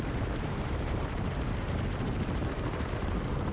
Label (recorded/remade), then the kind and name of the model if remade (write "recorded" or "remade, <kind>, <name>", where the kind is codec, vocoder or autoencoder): remade, vocoder, BigVGAN v2